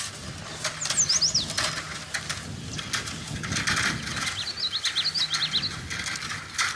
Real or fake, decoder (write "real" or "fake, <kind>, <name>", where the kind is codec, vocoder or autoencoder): real